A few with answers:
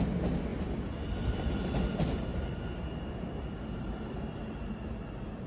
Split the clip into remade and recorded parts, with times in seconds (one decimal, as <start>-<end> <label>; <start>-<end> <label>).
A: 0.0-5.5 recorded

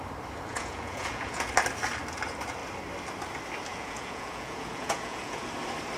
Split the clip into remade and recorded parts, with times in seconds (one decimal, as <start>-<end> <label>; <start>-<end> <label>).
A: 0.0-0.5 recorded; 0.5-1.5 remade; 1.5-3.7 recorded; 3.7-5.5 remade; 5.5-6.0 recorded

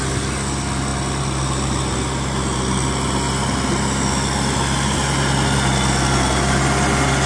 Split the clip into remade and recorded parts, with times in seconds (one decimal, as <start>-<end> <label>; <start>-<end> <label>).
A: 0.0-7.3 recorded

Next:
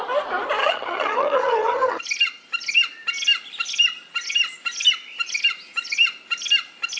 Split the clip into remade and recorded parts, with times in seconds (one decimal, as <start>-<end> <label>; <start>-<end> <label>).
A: 0.0-0.6 recorded; 0.6-2.0 remade; 2.0-7.0 recorded

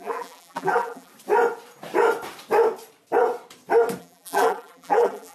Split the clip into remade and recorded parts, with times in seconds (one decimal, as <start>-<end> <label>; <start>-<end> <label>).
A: 0.0-1.1 remade; 1.1-4.0 recorded; 4.0-5.3 remade

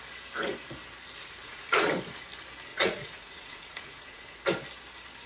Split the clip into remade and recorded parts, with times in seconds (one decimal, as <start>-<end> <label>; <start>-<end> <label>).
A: 0.0-1.2 recorded; 1.2-1.9 remade; 1.9-2.7 recorded; 2.7-4.4 remade; 4.4-5.3 recorded

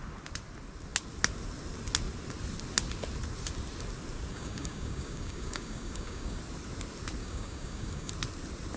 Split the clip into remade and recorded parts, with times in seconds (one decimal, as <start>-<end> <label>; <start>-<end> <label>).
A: 0.0-4.3 recorded; 4.3-6.4 remade; 6.4-7.2 recorded; 7.2-8.1 remade; 8.1-8.8 recorded